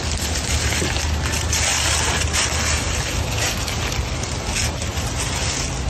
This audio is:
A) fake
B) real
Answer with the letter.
B